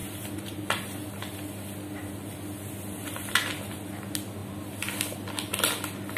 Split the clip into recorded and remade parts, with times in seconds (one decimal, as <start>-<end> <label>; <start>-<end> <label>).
0.0-6.2 recorded